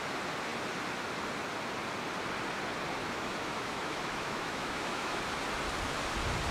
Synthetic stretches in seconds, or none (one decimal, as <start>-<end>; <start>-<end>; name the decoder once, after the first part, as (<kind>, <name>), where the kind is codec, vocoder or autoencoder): 3.0-5.2 (autoencoder, DAC-VAE)